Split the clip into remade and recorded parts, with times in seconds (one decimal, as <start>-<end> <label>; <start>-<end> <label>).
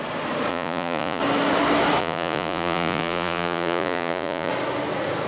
0.0-0.5 recorded; 0.5-1.2 remade; 1.2-2.0 recorded; 2.0-4.5 remade; 4.5-5.3 recorded